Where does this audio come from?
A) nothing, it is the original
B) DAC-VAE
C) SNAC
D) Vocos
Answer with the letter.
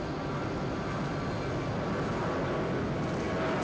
A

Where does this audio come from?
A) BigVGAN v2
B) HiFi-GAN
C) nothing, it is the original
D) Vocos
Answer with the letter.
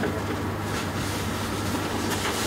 C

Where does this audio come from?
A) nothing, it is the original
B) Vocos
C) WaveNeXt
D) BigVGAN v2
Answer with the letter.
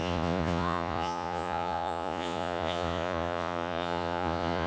B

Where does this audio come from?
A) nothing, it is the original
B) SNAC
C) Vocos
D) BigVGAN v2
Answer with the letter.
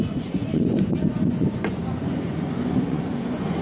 C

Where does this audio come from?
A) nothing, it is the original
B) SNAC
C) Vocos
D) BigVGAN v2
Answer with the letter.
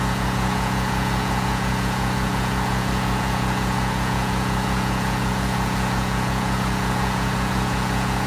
C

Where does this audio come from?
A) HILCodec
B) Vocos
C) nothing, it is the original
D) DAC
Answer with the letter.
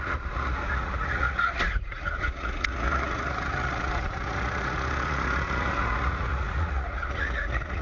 B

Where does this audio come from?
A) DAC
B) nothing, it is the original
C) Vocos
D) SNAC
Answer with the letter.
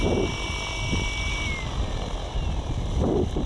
B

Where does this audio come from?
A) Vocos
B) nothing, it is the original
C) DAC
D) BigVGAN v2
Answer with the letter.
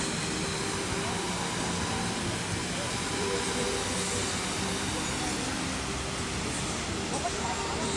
B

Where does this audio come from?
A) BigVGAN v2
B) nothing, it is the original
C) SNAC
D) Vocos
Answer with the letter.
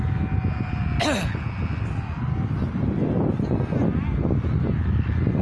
B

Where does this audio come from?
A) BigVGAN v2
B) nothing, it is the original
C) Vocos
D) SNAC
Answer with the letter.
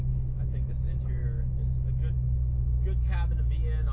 B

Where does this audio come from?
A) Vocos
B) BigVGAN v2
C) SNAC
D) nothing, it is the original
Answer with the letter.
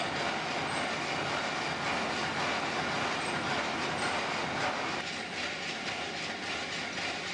D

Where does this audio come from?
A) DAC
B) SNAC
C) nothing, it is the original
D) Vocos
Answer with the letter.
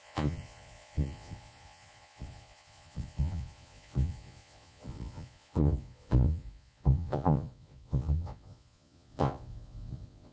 D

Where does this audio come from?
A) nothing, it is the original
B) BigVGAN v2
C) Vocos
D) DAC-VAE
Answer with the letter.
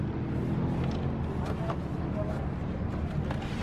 A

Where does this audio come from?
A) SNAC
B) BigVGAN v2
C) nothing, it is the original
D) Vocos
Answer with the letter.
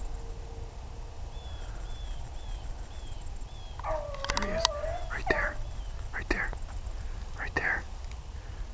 C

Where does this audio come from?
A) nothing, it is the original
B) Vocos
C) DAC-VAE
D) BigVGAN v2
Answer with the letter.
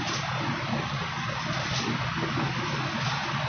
A